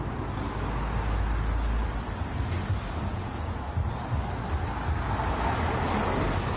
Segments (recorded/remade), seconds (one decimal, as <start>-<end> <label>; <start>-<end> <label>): 0.0-3.1 recorded; 3.1-3.7 remade; 3.7-6.6 recorded